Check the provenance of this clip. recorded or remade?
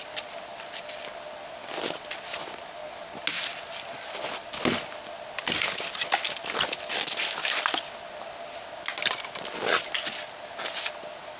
recorded